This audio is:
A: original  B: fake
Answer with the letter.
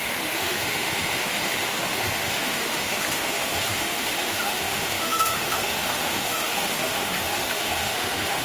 B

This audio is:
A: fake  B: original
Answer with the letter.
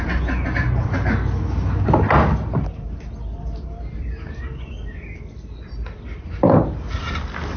B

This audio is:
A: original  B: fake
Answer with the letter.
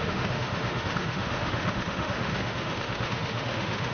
B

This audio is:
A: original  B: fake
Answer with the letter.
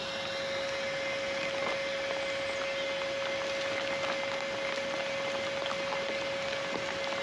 A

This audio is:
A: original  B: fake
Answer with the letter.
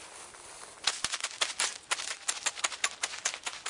A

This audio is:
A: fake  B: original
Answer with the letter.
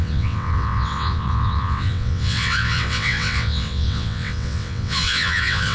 A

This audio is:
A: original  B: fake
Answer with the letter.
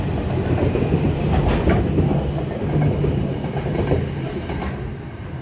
A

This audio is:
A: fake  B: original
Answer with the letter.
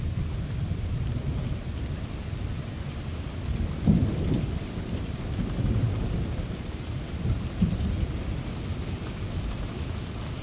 B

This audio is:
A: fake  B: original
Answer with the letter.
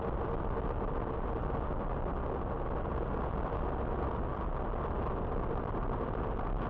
B